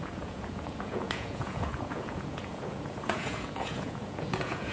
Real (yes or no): no